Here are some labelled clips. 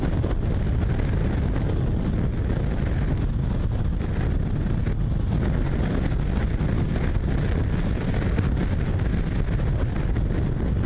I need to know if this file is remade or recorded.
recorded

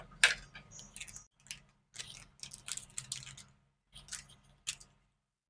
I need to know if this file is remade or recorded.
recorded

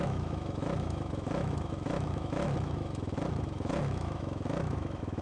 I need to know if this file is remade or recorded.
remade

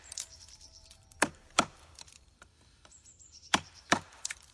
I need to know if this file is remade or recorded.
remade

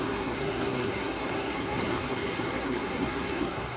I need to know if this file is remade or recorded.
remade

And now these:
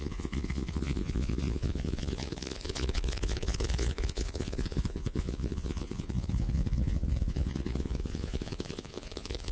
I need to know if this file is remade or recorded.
remade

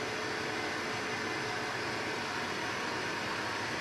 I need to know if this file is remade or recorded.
recorded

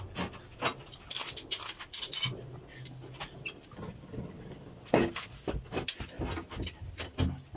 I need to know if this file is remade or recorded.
recorded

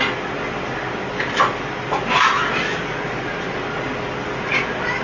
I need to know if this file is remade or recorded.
recorded